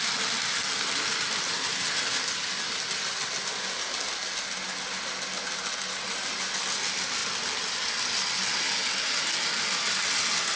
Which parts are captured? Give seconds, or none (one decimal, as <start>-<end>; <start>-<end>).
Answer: 0.0-7.2; 8.6-10.6